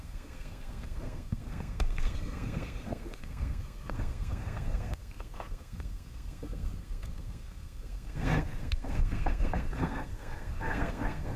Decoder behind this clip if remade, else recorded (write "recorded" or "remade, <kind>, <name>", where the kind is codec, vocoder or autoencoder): remade, codec, SNAC